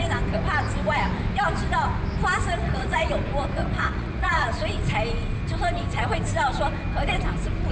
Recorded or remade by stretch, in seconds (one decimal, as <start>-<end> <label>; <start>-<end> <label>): 0.0-2.6 recorded; 2.6-3.1 remade; 3.1-3.6 recorded; 3.6-4.5 remade; 4.5-7.7 recorded